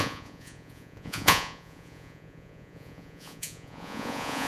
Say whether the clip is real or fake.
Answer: fake